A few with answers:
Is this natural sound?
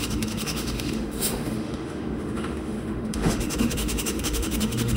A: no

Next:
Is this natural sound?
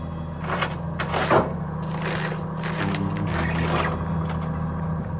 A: yes